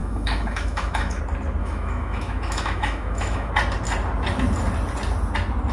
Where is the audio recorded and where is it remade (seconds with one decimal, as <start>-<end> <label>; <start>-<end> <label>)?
0.0-1.2 remade; 1.2-1.6 recorded; 1.6-3.5 remade; 3.5-5.7 recorded